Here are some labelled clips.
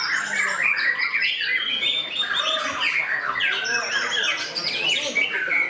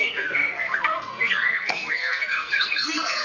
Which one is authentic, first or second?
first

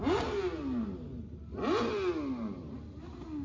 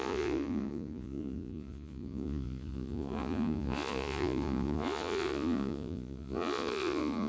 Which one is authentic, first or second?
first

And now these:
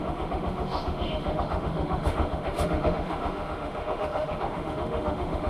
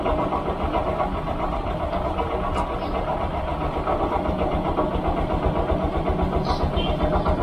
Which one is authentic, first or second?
second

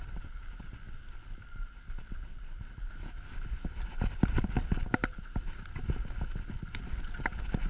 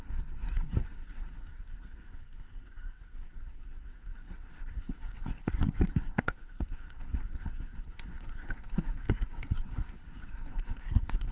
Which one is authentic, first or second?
first